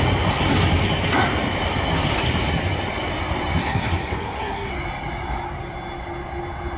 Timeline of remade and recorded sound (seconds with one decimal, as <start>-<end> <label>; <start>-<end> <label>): 0.0-3.6 recorded; 3.6-4.7 remade; 4.7-6.8 recorded